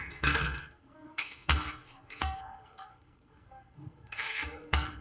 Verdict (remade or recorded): remade